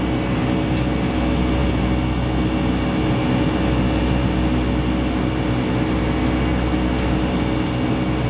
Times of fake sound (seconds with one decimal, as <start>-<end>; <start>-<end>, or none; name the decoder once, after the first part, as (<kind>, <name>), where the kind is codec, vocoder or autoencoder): none